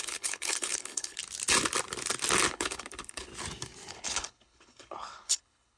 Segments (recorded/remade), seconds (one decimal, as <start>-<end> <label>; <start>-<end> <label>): 0.0-1.2 remade; 1.2-2.5 recorded; 2.5-3.3 remade; 3.3-3.9 recorded; 3.9-5.8 remade